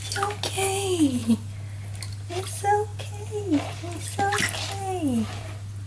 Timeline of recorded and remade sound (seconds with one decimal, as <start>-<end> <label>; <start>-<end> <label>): 0.0-5.9 recorded